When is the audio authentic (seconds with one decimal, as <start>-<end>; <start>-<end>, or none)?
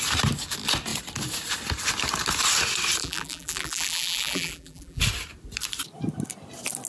0.0-3.0; 5.0-6.9